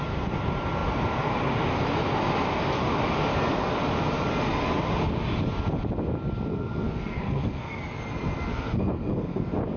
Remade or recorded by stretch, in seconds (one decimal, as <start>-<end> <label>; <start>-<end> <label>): 0.0-6.5 recorded; 6.5-7.8 remade; 7.8-8.5 recorded; 8.5-9.4 remade; 9.4-9.8 recorded